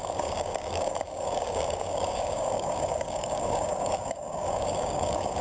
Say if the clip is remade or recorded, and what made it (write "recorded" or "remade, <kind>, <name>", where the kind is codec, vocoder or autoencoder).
remade, codec, DAC